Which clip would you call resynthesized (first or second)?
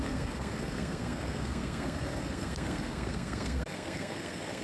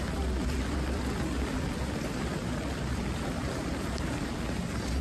first